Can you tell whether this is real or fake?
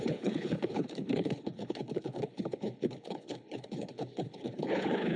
fake